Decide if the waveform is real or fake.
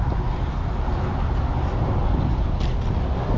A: real